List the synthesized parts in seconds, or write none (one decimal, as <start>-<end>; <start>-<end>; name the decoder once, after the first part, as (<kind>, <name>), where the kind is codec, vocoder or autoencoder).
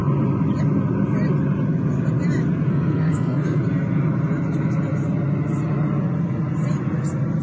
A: 2.7-3.6 (codec, SNAC)